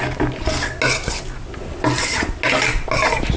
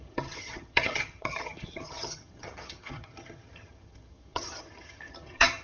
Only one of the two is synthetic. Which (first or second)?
second